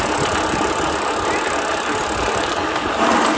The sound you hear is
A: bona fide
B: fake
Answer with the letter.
A